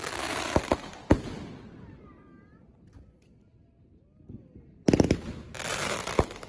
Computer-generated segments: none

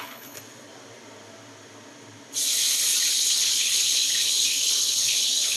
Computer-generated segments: 0.0-0.4; 3.1-5.6

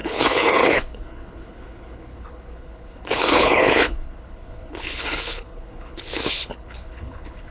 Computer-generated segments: 0.0-7.5

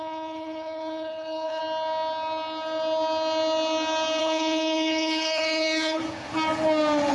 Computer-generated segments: 0.0-1.6; 4.2-6.0

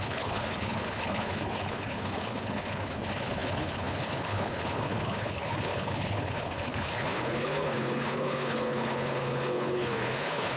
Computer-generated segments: 0.0-10.6

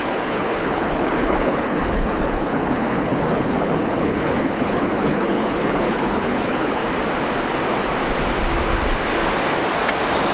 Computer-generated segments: 0.0-6.8

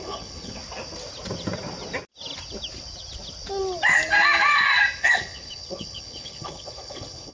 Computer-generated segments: 0.0-0.6; 5.0-7.3